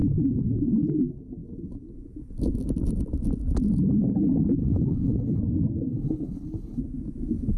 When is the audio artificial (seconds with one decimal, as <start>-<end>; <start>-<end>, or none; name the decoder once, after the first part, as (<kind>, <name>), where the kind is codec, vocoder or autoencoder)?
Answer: 4.6-5.4 (codec, HILCodec); 5.9-6.8